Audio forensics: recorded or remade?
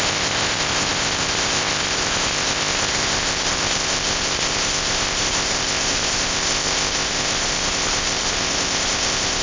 remade